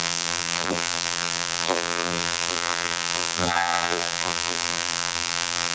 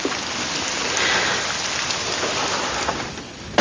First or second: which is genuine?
second